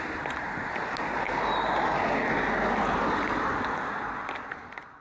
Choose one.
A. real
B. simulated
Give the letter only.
A